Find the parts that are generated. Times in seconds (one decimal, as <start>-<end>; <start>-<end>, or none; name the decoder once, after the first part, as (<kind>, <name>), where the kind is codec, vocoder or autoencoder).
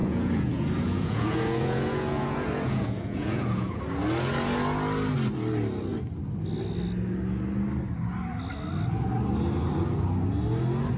0.0-3.8 (vocoder, Vocos)